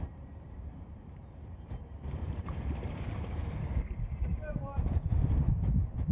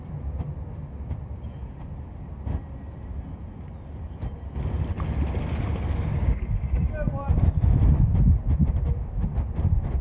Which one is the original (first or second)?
second